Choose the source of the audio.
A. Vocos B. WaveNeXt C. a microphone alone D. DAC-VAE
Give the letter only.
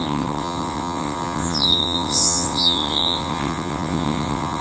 B